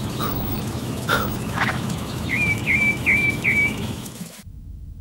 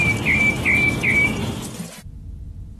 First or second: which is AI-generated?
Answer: first